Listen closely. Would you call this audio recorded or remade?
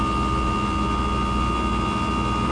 recorded